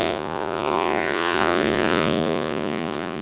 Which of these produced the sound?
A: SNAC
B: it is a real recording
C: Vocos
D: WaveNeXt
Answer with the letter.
C